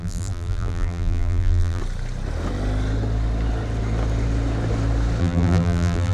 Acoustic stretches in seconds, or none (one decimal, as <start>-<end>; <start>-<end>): 1.8-5.2